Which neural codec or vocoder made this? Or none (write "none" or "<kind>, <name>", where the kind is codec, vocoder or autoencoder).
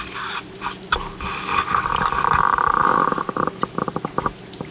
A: none